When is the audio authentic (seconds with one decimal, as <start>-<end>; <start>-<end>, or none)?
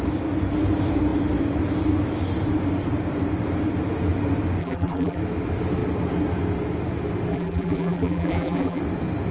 0.0-4.6; 5.2-7.3; 8.8-9.3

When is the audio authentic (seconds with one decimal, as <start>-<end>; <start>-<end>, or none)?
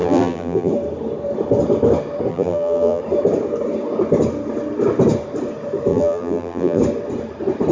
0.7-2.3; 3.0-5.9; 6.8-7.7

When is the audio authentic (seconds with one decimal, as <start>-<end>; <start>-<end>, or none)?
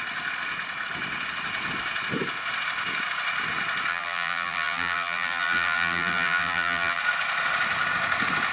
0.0-3.9; 7.0-8.5